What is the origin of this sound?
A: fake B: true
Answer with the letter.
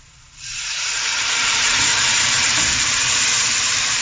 A